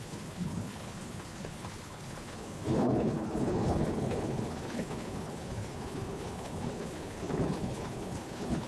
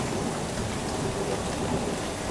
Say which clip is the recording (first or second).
second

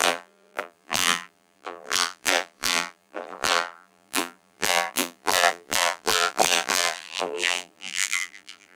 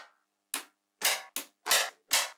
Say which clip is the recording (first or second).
second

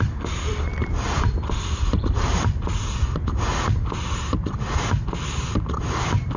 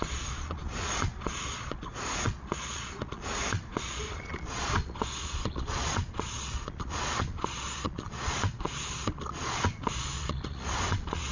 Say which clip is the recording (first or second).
first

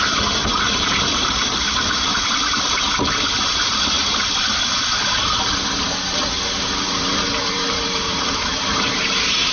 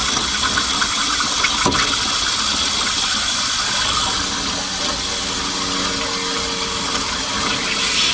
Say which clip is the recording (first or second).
second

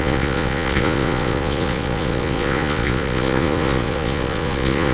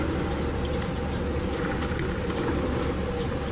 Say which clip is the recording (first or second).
second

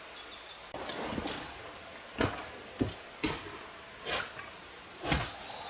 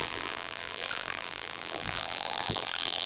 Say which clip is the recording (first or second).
first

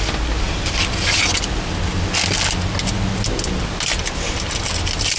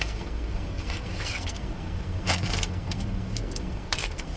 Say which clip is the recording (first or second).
first